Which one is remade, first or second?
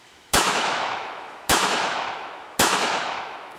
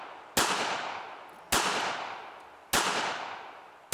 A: first